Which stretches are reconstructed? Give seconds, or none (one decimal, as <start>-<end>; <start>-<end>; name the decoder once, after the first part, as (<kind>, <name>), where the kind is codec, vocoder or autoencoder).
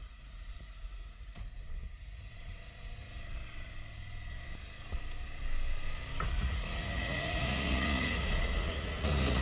0.0-3.0 (vocoder, Vocos); 6.2-9.4